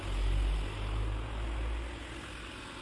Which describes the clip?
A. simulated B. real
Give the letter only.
B